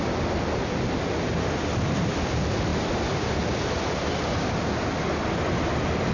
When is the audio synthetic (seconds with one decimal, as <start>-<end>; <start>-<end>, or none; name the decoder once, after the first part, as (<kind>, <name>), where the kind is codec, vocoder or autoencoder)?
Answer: none